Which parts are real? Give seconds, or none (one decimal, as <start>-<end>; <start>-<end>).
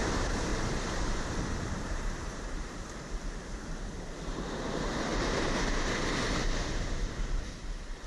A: 0.0-0.5; 3.3-5.1; 6.1-8.1